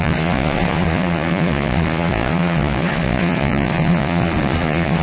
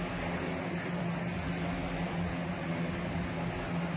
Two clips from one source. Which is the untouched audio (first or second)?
second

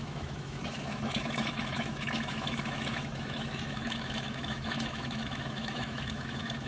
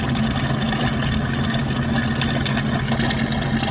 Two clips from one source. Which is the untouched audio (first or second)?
second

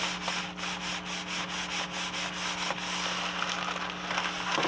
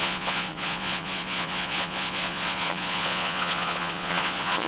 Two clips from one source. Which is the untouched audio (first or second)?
first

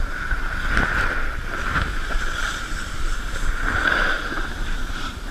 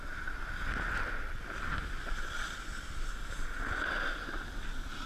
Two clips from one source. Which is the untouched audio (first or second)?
second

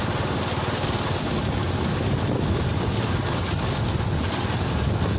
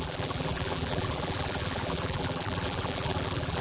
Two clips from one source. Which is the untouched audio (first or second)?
first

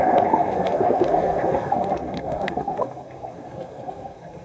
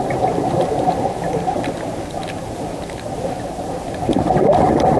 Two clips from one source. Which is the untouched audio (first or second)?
second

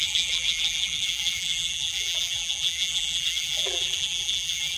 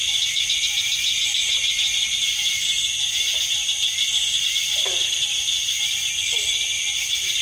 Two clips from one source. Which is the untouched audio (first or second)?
second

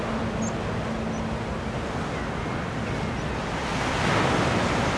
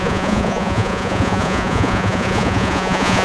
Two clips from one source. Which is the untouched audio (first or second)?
first